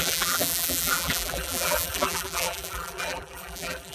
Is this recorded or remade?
remade